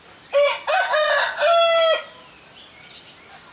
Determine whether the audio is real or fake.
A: real